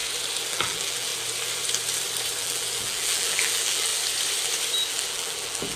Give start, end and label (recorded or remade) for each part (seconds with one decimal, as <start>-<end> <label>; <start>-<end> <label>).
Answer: 0.0-0.5 recorded; 0.5-1.1 remade; 1.1-2.4 recorded; 2.4-3.9 remade; 3.9-4.9 recorded; 4.9-5.8 remade